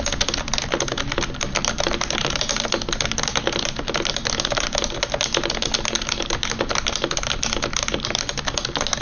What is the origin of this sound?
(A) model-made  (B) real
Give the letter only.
B